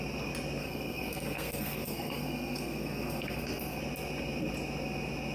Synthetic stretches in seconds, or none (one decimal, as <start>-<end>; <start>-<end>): 0.6-3.8